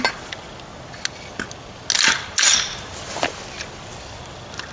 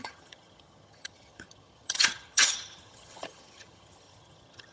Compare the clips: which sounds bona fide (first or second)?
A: first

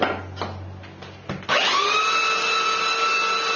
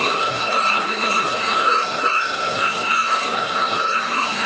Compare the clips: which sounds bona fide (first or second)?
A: first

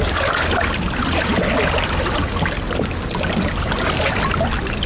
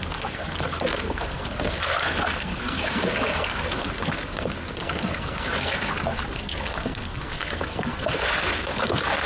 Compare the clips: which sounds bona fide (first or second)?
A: first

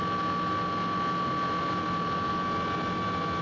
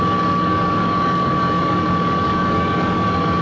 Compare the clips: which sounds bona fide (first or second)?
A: first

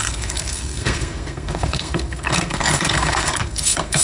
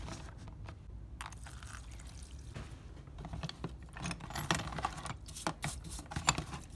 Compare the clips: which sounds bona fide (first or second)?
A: second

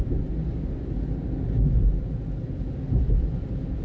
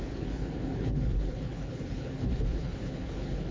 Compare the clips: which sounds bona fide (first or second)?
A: first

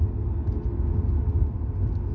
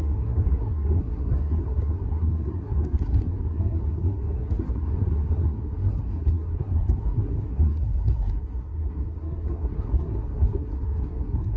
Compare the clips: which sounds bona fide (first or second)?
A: first